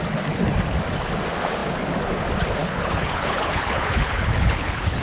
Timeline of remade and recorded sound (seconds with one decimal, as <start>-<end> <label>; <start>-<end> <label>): 0.0-2.6 recorded; 2.6-5.0 remade